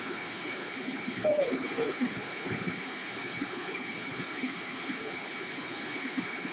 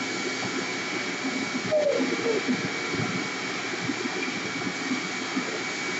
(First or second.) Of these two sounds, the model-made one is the first